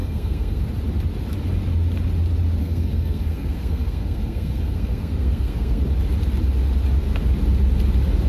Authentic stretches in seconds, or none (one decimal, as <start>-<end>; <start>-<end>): 0.6-2.6; 5.8-8.3